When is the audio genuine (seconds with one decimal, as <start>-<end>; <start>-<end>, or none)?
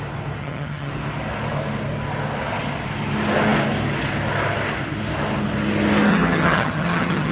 0.0-0.4; 0.9-6.1